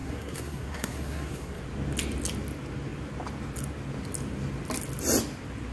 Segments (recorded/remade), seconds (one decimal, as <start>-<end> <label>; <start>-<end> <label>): 0.0-1.6 remade; 1.6-5.7 recorded